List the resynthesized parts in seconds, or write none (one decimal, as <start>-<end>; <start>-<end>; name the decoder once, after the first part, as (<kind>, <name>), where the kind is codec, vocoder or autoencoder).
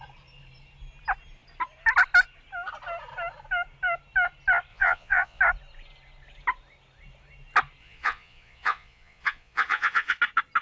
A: 4.7-5.4 (vocoder, Vocos); 7.8-10.2